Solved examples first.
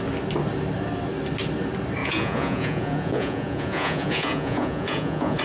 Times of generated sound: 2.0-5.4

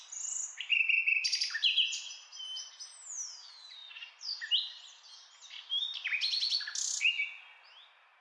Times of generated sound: 0.7-2.7

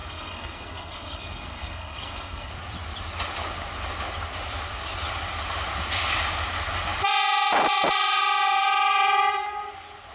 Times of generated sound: 0.0-2.5

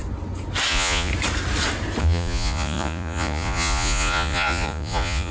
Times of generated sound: 0.7-1.1; 2.0-5.3

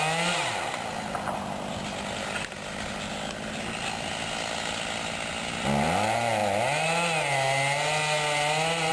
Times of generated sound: none

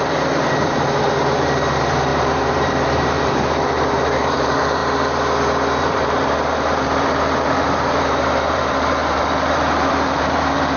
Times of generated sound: 0.0-4.8; 5.8-10.8

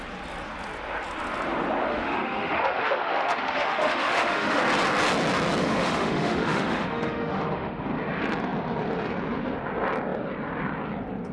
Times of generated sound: 1.8-4.6; 5.6-7.8